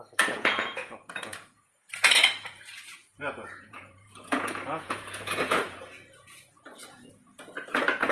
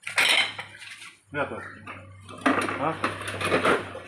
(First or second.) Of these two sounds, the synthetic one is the first